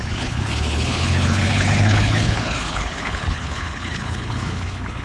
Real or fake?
fake